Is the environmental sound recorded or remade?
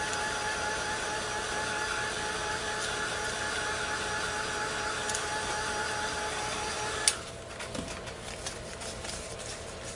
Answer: recorded